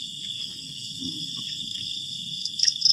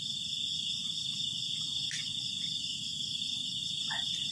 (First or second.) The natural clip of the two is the second